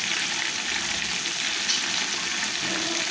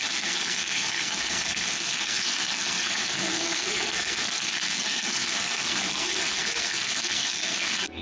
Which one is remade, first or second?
second